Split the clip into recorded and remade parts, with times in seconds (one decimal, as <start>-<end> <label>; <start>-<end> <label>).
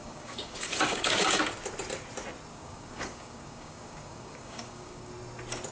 0.0-1.4 remade; 1.4-2.5 recorded; 2.5-5.1 remade; 5.1-5.7 recorded